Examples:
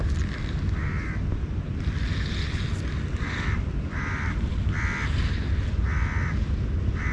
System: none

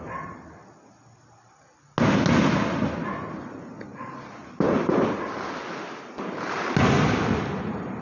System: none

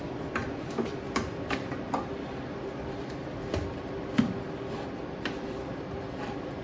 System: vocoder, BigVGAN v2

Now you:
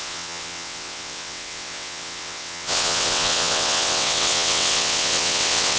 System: vocoder, WaveNeXt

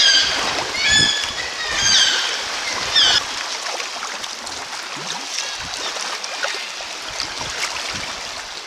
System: none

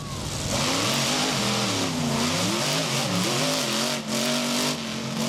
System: none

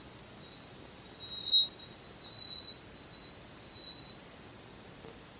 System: none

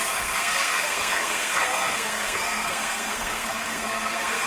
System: codec, SNAC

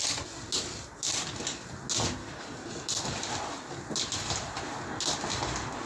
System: none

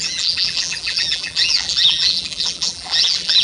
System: vocoder, BigVGAN v2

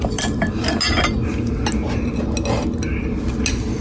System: none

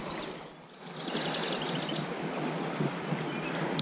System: none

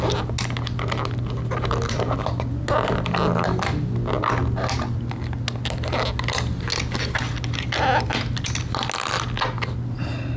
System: none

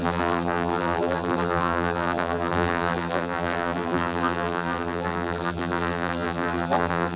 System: vocoder, BigVGAN v2